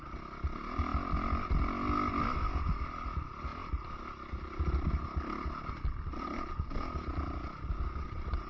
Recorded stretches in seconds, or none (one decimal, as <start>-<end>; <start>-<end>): 0.0-8.5